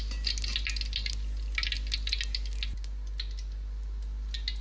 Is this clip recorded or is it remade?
recorded